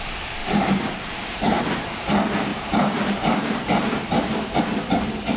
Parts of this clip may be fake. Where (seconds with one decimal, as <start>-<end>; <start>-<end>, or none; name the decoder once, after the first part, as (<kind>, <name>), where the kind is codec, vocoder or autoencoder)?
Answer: 0.4-1.7 (vocoder, BigVGAN v2); 2.5-4.6